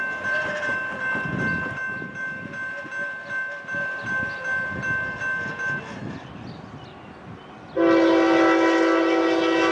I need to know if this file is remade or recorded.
recorded